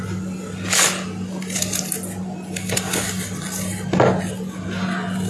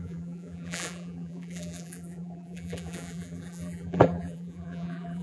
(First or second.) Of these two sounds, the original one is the first